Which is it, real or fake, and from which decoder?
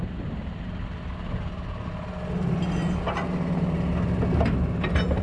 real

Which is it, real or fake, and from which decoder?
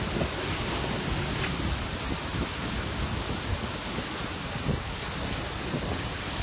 real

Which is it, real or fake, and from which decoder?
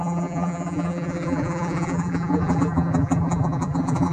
fake, vocoder, BigVGAN v2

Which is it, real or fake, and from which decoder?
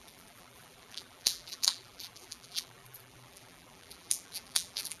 fake, vocoder, BigVGAN v2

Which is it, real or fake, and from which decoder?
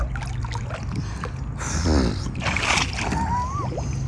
real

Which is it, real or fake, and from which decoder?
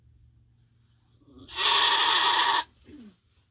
real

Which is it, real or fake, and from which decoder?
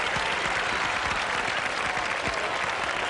real